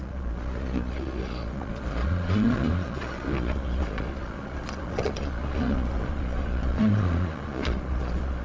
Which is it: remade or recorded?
remade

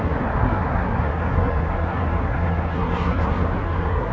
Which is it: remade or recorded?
remade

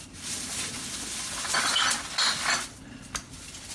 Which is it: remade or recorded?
recorded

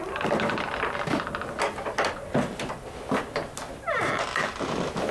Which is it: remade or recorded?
recorded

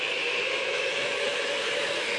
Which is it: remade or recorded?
remade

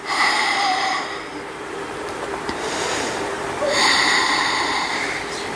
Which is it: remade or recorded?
remade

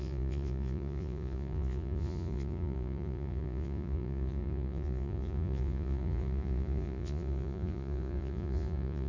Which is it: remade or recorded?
remade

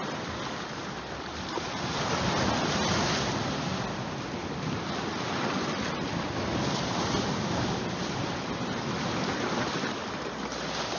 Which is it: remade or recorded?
recorded